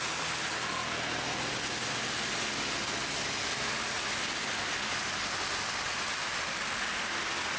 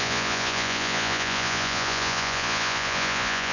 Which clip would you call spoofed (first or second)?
second